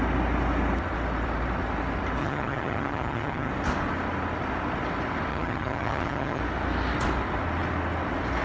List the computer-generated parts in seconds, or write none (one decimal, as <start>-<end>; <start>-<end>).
2.2-3.5; 5.3-6.4